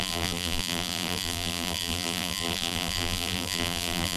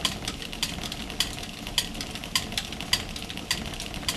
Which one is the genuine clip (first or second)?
second